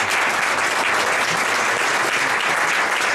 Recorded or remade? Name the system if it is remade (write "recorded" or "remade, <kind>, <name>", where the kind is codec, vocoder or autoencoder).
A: recorded